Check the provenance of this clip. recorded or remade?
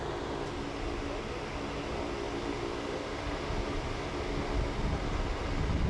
recorded